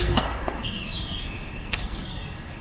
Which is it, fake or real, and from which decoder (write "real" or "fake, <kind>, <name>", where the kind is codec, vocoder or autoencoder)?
fake, codec, SNAC